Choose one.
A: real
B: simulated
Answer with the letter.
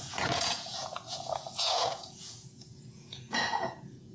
B